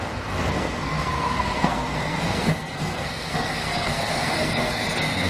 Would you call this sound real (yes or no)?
no